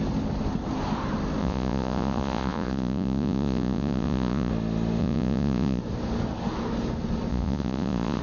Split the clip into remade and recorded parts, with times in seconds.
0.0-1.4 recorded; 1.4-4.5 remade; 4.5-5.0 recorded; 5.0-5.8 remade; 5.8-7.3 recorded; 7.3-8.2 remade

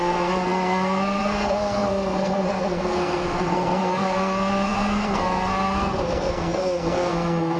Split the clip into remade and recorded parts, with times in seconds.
0.0-7.6 remade

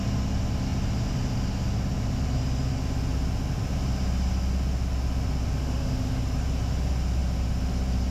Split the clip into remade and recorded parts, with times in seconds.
0.0-5.6 recorded; 5.6-6.2 remade; 6.2-8.1 recorded

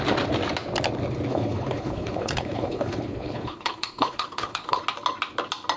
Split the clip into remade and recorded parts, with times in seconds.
0.0-1.3 recorded; 1.3-4.8 remade; 4.8-5.8 recorded

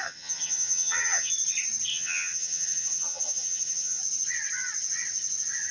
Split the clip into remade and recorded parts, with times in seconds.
0.0-1.3 remade; 1.3-1.9 recorded; 1.9-4.0 remade; 4.0-5.7 recorded